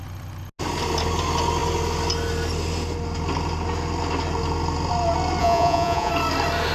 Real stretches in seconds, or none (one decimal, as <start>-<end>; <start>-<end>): 0.0-5.4; 6.1-6.7